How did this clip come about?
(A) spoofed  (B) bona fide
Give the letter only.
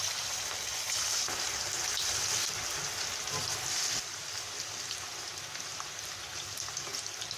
B